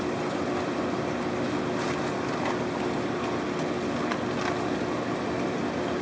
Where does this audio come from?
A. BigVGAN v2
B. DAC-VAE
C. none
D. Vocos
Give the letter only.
C